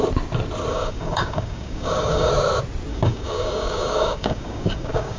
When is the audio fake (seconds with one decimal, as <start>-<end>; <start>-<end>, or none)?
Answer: 0.7-2.3; 2.9-5.2